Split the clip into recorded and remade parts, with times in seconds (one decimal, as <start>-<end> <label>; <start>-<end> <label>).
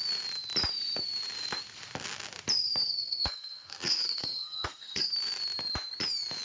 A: 0.0-2.8 recorded; 2.8-5.1 remade; 5.1-6.4 recorded